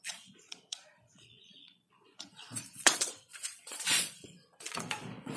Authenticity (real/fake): fake